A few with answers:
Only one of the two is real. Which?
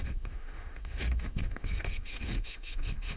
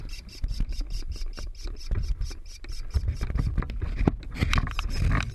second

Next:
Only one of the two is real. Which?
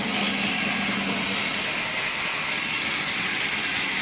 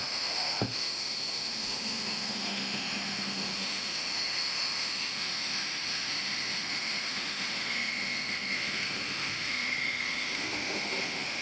first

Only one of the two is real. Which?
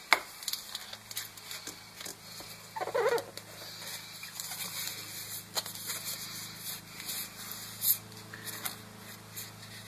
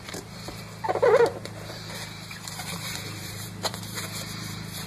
first